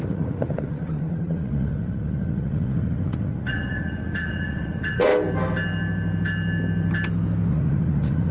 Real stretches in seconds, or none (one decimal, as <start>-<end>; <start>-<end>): 5.1-7.5